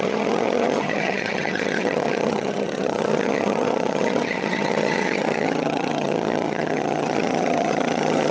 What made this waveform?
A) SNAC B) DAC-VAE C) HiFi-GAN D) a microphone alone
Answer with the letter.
C